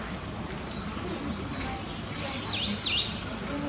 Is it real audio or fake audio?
real